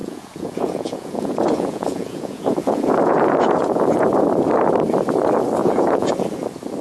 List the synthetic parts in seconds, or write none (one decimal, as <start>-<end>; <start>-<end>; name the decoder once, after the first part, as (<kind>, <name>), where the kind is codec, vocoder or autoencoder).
0.0-4.1 (vocoder, Vocos); 5.6-6.1